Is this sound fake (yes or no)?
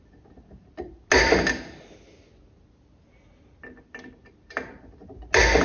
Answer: no